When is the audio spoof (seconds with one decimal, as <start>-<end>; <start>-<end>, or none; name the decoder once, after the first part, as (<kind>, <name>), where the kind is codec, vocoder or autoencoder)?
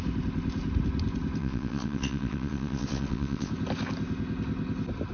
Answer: 1.4-3.5 (vocoder, WaveNeXt)